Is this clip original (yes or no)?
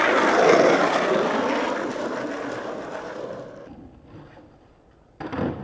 no